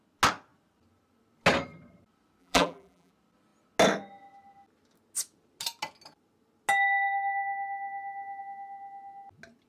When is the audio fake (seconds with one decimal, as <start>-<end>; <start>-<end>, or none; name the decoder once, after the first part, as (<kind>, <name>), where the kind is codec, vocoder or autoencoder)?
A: 2.4-3.1 (vocoder, BigVGAN v2)